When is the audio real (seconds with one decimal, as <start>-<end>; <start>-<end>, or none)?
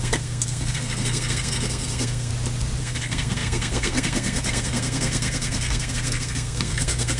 2.3-2.8